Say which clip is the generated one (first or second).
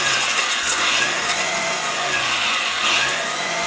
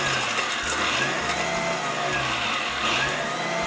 first